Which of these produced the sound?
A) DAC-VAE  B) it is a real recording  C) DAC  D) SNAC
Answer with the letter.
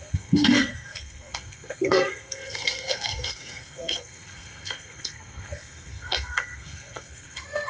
D